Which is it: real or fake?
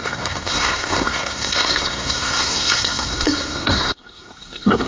fake